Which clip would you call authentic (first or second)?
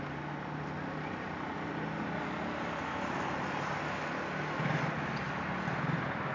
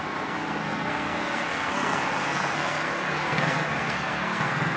first